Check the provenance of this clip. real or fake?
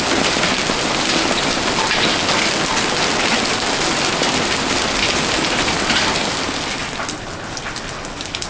real